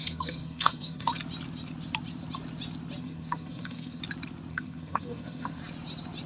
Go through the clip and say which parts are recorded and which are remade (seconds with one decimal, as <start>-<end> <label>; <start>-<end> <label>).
0.0-1.1 remade; 1.1-3.0 recorded; 3.0-4.0 remade; 4.0-4.5 recorded; 4.5-5.6 remade; 5.6-6.3 recorded